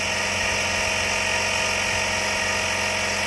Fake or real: real